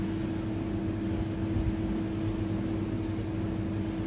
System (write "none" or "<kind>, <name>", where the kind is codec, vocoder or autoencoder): none